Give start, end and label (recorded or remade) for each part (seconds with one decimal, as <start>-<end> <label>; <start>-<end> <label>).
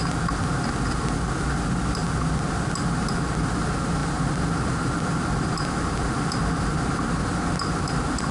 0.0-4.0 recorded; 4.0-7.0 remade; 7.0-8.3 recorded